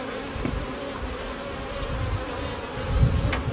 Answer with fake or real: real